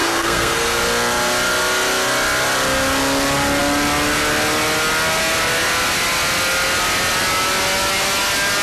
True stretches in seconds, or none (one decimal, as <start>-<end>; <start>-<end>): 0.8-8.6